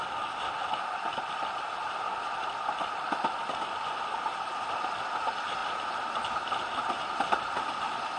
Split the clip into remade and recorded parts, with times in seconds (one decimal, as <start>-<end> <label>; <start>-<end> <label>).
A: 0.0-8.2 recorded